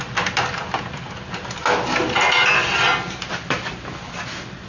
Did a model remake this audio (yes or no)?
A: no